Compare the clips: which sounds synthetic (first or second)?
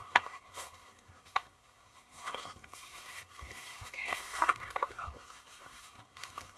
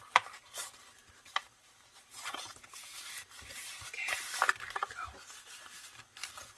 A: first